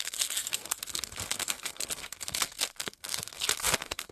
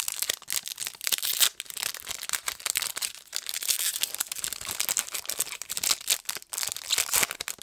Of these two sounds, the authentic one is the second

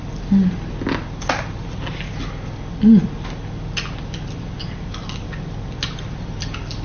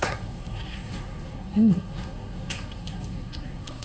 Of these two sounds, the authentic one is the first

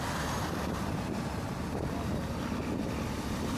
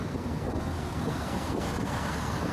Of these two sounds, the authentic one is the first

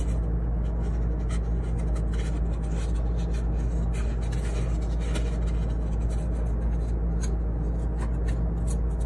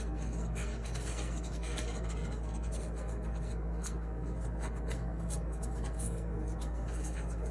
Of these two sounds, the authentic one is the first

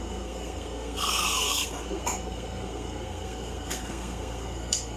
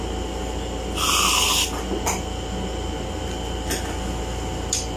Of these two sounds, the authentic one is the second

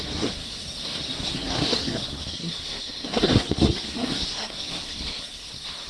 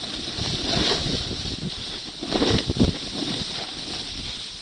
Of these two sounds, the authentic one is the second